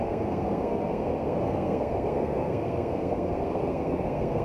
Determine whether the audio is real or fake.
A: fake